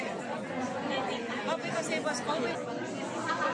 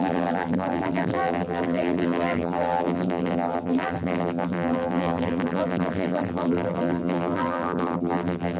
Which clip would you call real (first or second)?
first